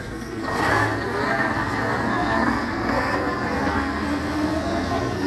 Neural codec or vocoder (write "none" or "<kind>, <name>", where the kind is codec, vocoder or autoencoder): codec, SNAC